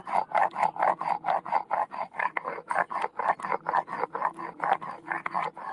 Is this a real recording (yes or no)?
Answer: yes